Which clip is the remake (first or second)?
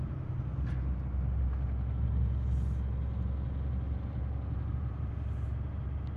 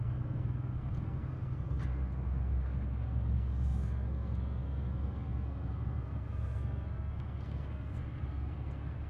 second